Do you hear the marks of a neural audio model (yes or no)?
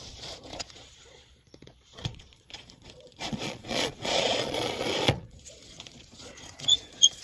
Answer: yes